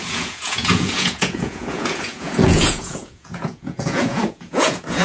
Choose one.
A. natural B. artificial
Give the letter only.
B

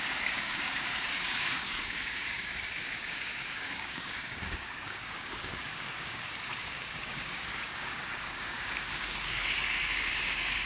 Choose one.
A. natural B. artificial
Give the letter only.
B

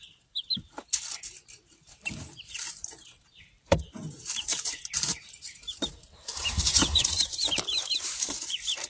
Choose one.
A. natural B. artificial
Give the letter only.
B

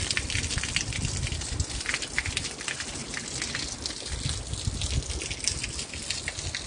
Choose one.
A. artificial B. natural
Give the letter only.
B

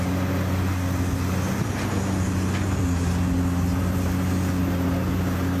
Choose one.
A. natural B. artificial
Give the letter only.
A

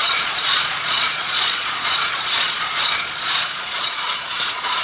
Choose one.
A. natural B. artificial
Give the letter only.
B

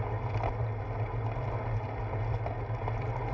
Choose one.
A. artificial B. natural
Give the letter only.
B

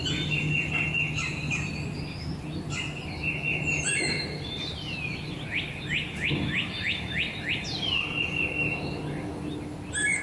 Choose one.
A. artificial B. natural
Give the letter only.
B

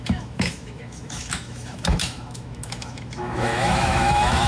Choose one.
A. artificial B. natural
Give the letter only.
A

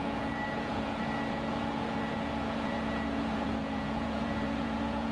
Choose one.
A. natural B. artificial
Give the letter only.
B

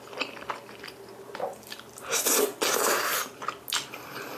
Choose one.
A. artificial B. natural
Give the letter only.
B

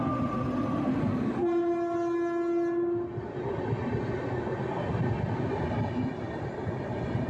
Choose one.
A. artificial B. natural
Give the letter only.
B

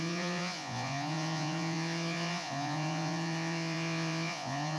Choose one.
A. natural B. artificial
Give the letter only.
B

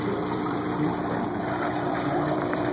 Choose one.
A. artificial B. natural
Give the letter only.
A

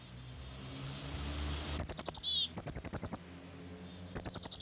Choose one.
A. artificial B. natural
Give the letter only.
B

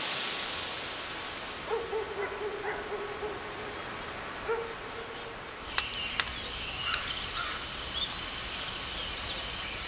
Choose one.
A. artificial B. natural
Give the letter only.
B